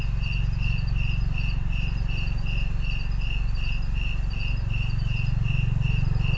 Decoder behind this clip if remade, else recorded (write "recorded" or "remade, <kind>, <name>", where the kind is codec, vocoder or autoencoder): recorded